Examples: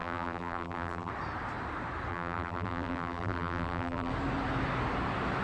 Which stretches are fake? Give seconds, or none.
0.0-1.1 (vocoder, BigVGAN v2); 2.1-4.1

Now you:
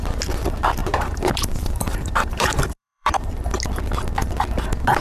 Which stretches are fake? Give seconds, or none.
0.8-3.3 (vocoder, BigVGAN v2)